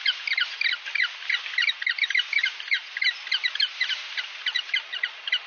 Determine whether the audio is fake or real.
real